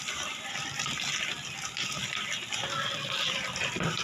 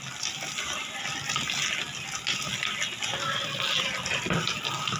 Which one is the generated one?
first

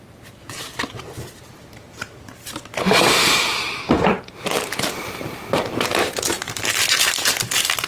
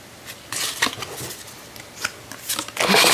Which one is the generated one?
first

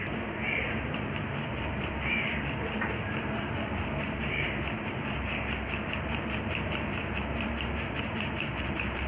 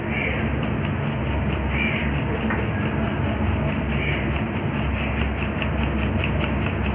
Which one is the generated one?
first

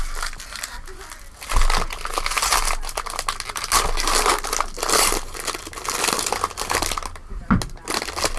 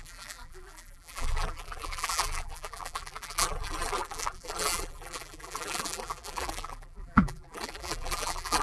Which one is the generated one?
second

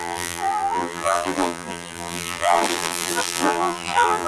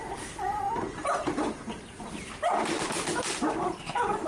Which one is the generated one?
first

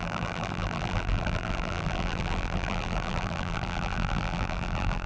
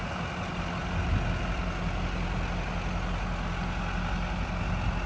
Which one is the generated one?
first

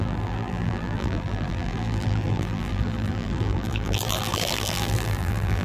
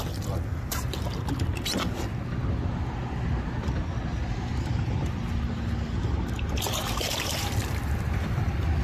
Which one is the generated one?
first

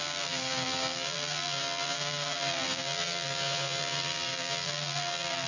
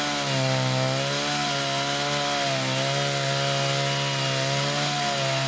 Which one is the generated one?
first